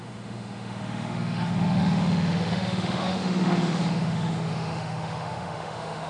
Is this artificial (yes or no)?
yes